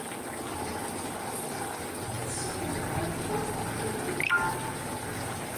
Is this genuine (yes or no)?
yes